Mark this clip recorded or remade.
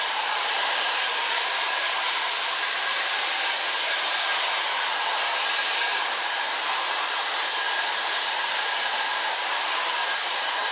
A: remade